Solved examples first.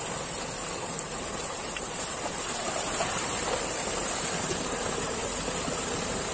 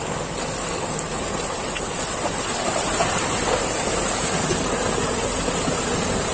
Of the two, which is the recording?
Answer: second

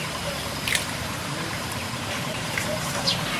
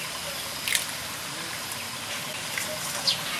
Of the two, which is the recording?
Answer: second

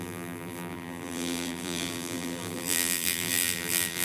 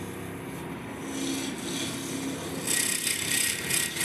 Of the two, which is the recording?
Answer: second